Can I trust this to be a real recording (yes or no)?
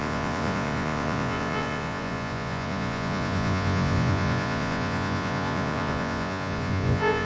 no